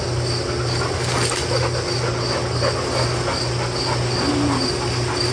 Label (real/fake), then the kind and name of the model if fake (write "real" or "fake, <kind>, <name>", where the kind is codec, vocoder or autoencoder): real